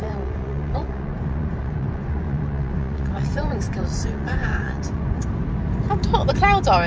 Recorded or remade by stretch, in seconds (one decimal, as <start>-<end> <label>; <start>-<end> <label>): 0.0-5.2 remade; 5.2-6.9 recorded